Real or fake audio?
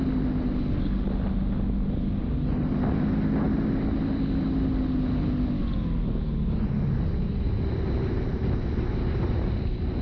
real